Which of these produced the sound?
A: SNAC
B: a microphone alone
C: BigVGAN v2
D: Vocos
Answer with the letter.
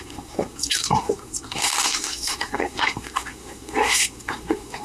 A